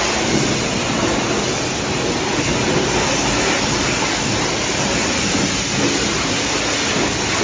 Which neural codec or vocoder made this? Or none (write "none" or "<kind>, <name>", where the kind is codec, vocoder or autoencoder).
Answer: none